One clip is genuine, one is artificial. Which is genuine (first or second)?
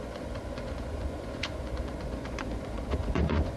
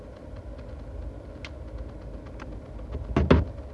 second